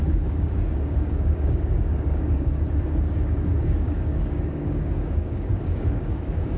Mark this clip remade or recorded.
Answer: remade